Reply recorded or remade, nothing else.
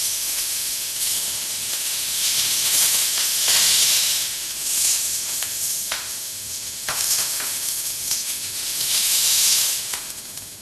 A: remade